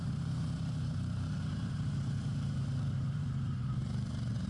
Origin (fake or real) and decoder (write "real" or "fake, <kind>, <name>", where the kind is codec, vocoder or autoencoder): fake, vocoder, BigVGAN v2